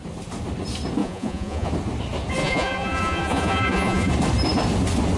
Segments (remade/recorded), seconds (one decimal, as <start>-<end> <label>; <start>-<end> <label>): 0.0-1.0 recorded; 1.0-1.7 remade; 1.7-2.4 recorded; 2.4-4.1 remade; 4.1-5.2 recorded